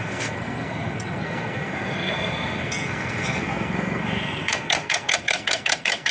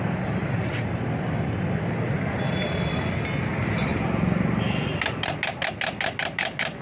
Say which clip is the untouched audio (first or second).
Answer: second